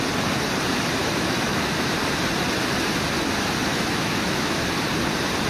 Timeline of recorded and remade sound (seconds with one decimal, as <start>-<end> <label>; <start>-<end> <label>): 0.0-1.0 recorded; 1.0-1.9 remade; 1.9-3.7 recorded; 3.7-4.7 remade; 4.7-5.5 recorded